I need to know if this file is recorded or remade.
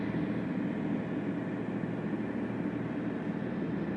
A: recorded